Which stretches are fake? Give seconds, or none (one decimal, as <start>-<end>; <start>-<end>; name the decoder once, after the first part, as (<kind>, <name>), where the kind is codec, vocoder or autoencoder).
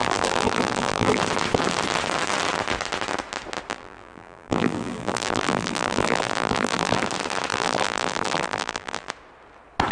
0.0-1.2 (vocoder, BigVGAN v2); 3.7-7.0; 7.5-9.1